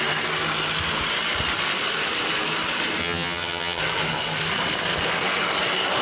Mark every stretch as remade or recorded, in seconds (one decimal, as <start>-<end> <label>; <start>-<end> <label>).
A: 0.0-3.0 recorded; 3.0-3.8 remade; 3.8-6.0 recorded